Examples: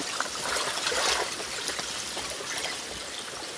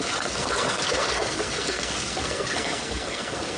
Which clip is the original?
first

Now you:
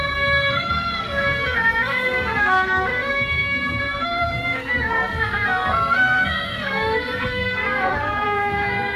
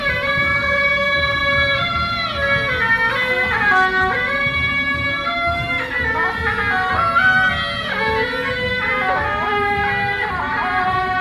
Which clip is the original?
second